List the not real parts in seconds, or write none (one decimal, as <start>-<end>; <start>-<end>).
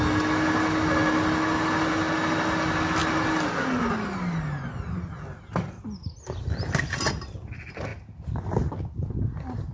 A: none